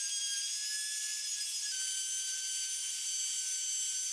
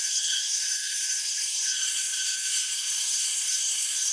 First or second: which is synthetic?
second